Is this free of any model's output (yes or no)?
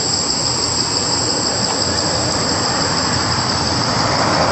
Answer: yes